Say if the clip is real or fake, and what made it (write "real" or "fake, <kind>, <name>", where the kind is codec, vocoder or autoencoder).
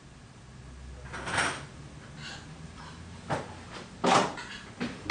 real